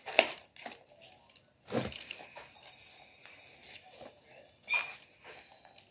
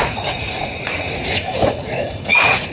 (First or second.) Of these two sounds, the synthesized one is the second